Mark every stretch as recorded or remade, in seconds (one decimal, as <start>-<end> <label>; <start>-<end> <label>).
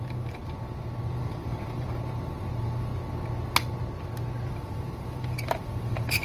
0.0-0.4 remade; 0.4-1.0 recorded; 1.0-2.9 remade; 2.9-4.5 recorded; 4.5-6.2 remade